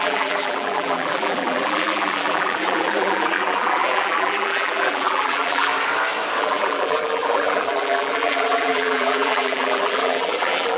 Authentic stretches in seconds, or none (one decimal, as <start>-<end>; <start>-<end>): 5.7-6.4